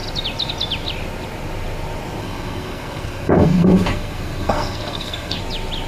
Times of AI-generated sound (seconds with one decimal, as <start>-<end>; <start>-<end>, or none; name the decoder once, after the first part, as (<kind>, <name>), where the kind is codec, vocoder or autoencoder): 2.2-5.4 (codec, SNAC)